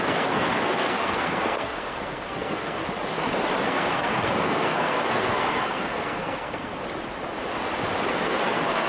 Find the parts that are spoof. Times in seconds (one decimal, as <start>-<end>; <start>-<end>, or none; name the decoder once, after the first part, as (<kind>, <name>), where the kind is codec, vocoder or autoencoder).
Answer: 0.0-2.8 (codec, SNAC); 3.6-6.7; 8.1-8.9